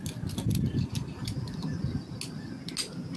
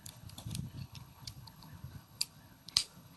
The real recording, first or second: first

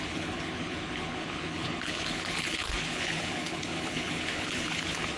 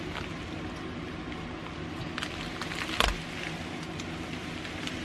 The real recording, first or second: second